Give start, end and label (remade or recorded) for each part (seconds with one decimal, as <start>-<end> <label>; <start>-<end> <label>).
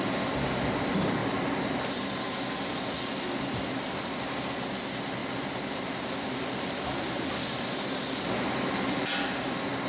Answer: 0.0-9.9 recorded